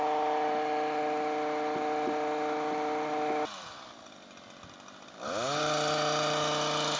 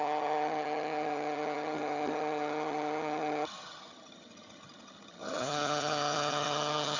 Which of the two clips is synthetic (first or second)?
second